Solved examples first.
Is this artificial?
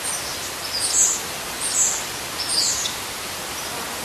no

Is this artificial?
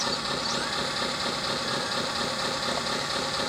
no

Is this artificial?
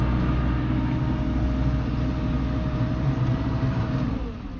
no